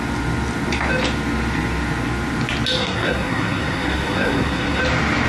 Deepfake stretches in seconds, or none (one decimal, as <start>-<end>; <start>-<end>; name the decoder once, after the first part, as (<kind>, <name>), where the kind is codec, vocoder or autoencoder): 2.8-4.8 (codec, SNAC)